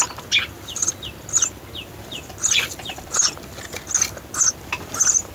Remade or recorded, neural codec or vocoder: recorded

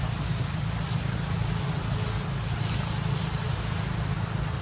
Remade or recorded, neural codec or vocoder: recorded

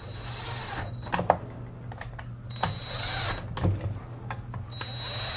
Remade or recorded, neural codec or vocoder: recorded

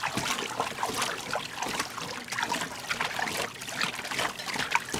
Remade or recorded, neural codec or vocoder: recorded